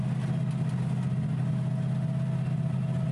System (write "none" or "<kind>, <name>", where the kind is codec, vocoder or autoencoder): none